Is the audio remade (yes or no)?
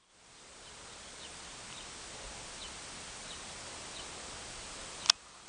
no